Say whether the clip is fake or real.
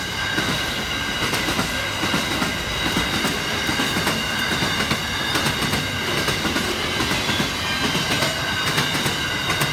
real